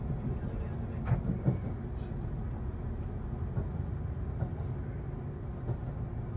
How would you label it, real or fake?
real